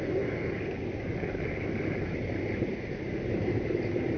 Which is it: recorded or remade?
recorded